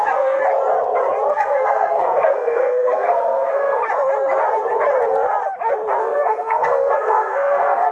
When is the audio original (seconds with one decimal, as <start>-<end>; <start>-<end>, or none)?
0.4-1.3; 3.8-6.0